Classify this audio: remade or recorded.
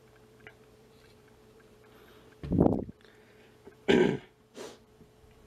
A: remade